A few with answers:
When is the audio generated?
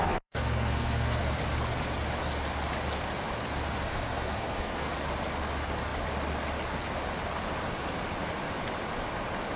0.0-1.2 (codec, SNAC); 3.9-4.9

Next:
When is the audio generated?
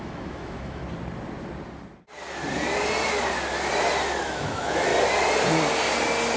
0.0-0.8 (autoencoder, DAC-VAE); 4.2-4.9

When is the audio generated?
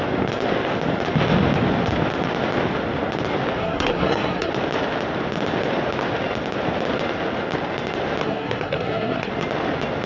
3.6-4.5 (codec, SNAC); 8.2-9.3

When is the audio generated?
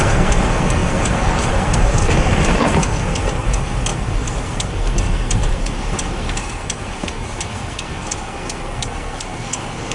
0.0-9.9 (codec, SNAC)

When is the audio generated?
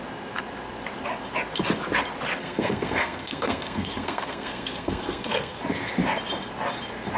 2.4-5.6 (codec, SNAC)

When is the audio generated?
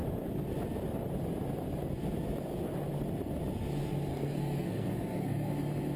4.1-5.5 (codec, SNAC)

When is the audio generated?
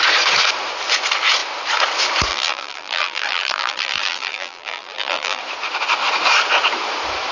2.3-5.4 (vocoder, BigVGAN v2)